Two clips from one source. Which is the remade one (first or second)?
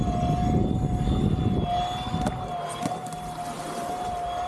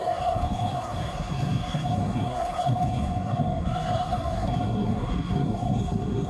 second